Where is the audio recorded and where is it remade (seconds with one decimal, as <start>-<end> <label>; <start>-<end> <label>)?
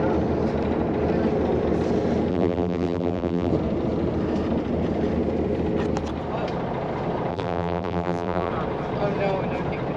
0.0-2.3 recorded; 2.3-3.5 remade; 3.5-7.3 recorded; 7.3-8.5 remade; 8.5-10.0 recorded